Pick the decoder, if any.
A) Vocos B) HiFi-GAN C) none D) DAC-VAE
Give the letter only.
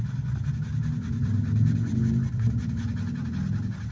C